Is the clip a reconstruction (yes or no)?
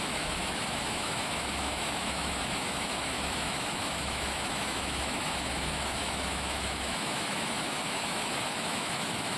yes